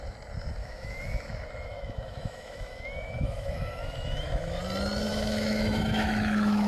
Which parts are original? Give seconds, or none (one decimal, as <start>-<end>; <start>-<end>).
0.0-0.6; 4.6-5.1